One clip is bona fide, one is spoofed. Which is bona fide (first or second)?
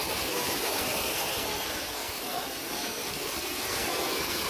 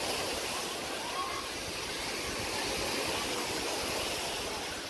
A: second